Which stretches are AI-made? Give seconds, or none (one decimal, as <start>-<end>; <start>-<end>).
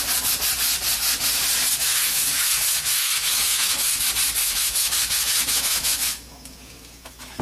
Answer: 1.8-4.0; 4.4-7.4